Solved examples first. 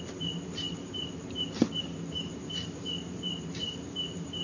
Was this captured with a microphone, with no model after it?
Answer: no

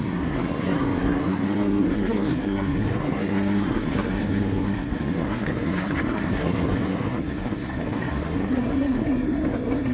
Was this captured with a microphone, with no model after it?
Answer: no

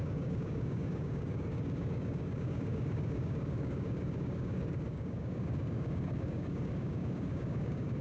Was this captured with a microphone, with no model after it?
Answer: no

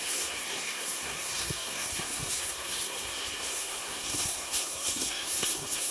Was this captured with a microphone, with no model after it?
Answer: no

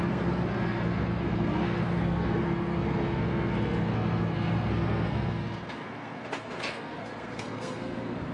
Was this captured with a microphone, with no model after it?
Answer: no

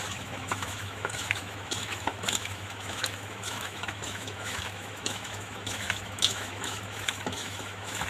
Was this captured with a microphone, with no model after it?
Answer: no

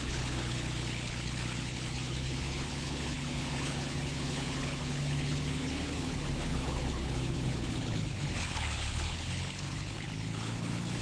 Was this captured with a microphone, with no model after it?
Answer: no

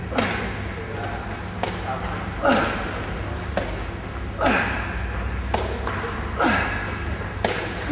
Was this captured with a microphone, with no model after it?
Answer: yes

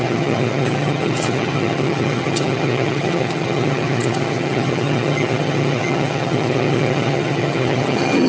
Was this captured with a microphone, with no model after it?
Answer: no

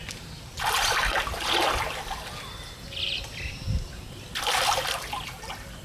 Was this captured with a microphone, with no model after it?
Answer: yes